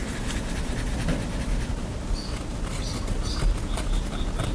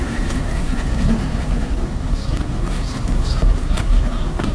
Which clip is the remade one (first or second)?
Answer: second